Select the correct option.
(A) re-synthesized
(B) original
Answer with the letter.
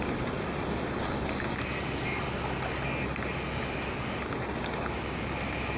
B